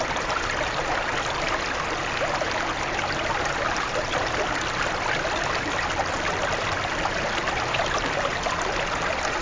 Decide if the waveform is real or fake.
real